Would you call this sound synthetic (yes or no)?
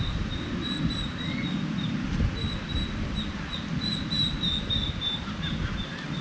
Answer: no